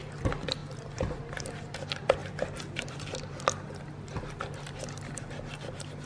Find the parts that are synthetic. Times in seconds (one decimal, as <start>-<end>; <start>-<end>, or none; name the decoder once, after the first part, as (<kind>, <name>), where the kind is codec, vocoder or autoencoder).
none

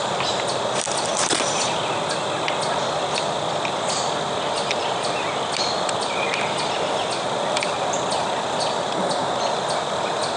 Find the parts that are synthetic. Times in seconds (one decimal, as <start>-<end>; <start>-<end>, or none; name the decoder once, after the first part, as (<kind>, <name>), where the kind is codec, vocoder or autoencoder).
none

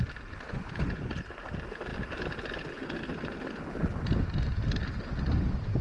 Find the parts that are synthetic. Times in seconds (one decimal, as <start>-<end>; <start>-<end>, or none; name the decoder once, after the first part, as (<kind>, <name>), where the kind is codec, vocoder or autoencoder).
0.5-1.1 (vocoder, Vocos)

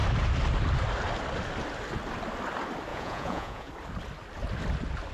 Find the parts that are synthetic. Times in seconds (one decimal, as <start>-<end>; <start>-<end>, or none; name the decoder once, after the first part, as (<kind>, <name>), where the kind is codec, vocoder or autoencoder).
2.9-3.7 (vocoder, Vocos)

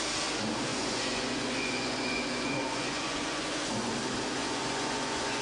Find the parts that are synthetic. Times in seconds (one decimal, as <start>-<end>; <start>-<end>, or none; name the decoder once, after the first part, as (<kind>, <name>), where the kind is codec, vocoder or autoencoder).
0.7-3.9 (vocoder, Vocos); 4.4-5.4

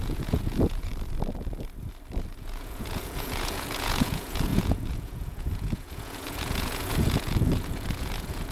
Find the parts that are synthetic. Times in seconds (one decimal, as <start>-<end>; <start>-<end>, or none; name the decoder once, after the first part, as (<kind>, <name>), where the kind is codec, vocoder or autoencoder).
0.0-0.9 (vocoder, Vocos); 2.3-8.5

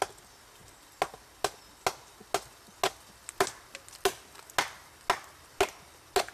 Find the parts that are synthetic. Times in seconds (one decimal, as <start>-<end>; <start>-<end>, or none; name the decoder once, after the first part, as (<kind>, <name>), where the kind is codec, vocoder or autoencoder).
none

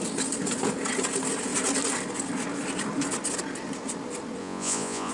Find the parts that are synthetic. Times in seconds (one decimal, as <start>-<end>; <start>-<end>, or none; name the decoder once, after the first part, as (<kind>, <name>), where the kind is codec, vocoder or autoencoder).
4.4-5.1 (vocoder, Vocos)